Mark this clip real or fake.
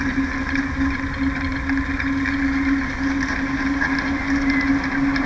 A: real